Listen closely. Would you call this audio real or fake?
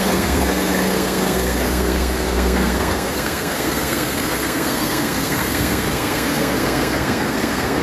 fake